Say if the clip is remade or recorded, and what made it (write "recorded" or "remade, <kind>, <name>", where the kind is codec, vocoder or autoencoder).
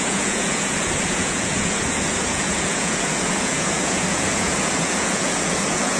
remade, vocoder, Vocos